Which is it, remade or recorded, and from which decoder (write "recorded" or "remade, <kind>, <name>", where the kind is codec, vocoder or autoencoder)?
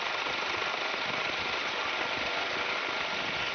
recorded